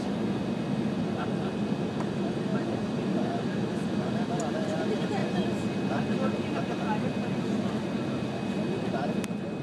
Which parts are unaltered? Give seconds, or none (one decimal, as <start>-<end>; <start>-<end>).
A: 0.0-9.6